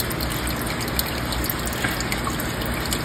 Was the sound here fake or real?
real